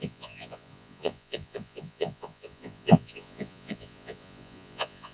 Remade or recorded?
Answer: remade